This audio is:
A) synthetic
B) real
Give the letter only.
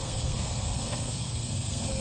A